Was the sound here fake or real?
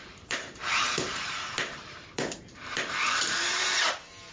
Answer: fake